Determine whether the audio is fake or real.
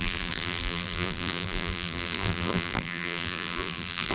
fake